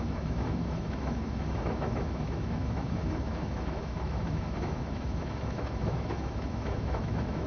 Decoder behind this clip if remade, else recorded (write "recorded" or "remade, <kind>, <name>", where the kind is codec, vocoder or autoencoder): remade, autoencoder, DAC-VAE